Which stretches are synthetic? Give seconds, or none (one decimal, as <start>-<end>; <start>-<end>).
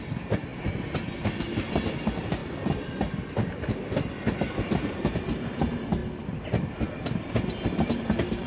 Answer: none